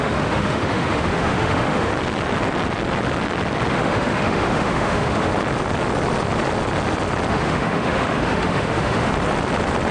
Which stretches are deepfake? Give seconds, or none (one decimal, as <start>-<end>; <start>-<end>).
0.0-1.9; 3.7-5.3; 7.3-9.1